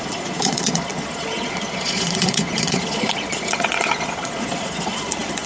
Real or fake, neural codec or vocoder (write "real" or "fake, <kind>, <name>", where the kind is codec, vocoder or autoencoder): fake, vocoder, Vocos